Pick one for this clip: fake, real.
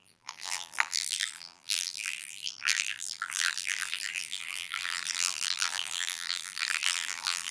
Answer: fake